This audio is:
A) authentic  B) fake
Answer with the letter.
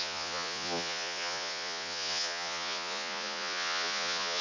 B